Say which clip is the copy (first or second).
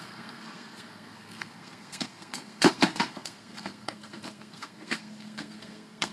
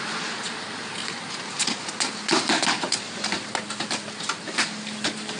first